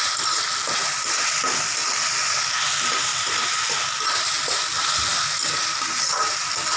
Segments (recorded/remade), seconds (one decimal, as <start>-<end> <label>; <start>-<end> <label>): 0.0-3.1 recorded; 3.1-3.8 remade; 3.8-5.1 recorded; 5.1-6.8 remade